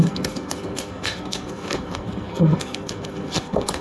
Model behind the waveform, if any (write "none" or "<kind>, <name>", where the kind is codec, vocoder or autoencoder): codec, SNAC